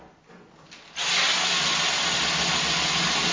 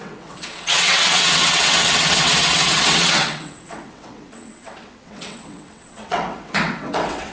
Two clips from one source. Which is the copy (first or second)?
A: second